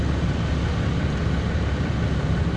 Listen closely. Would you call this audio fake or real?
real